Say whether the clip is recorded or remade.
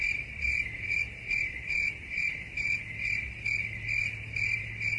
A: recorded